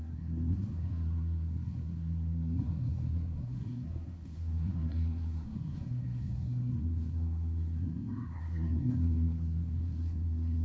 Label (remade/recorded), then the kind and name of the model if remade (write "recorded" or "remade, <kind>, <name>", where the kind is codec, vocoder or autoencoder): remade, codec, SNAC